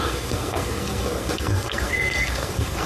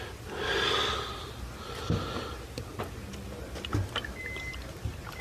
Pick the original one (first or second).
second